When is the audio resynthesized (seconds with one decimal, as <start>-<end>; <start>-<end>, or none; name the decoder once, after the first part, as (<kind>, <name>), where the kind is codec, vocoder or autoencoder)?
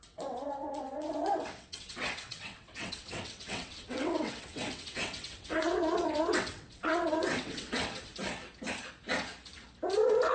0.0-8.1 (vocoder, WaveNeXt)